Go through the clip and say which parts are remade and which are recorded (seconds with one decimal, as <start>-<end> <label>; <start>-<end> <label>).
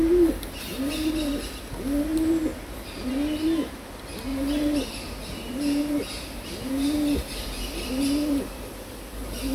0.0-1.1 remade; 1.1-4.3 recorded; 4.3-6.7 remade; 6.7-9.5 recorded